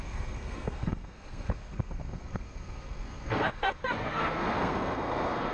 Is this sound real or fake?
fake